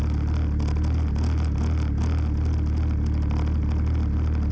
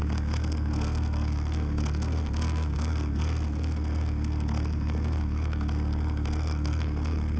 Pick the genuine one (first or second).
first